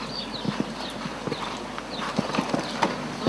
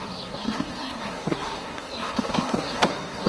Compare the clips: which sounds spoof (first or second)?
second